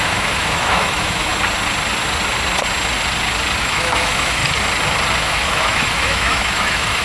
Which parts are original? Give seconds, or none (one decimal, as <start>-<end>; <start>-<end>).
1.3-3.6; 4.4-5.2